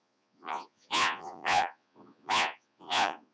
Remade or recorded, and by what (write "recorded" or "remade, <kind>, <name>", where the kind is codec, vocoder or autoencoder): remade, vocoder, Vocos